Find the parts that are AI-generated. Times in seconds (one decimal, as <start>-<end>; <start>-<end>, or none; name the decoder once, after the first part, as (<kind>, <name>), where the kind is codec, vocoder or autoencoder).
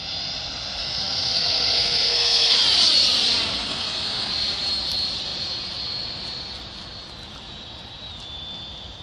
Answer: 0.8-2.6 (codec, SNAC); 3.5-4.3